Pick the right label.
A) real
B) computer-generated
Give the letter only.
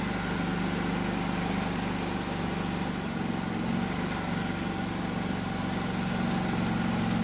A